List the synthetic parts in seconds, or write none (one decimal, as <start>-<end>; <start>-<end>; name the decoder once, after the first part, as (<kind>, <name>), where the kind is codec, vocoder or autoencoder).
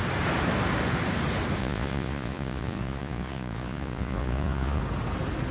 1.6-4.8 (vocoder, Vocos)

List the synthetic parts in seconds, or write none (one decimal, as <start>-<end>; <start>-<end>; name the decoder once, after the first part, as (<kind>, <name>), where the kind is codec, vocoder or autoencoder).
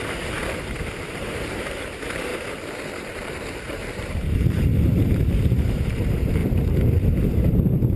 0.0-2.3 (vocoder, BigVGAN v2); 3.0-8.0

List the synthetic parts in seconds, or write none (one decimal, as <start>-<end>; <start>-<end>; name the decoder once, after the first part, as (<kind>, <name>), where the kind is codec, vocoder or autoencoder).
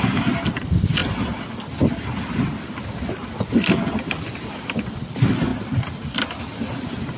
none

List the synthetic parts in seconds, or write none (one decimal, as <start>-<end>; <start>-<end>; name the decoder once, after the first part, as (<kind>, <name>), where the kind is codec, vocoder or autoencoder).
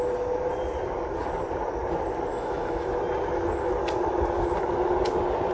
2.3-3.0 (autoencoder, DAC-VAE)